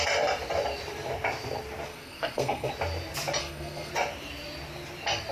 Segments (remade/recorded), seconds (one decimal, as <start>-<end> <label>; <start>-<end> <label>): 0.0-1.9 recorded; 1.9-2.7 remade; 2.7-3.4 recorded; 3.4-3.9 remade; 3.9-5.3 recorded